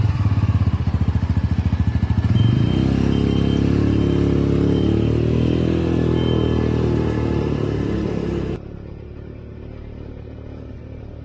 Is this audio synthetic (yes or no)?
no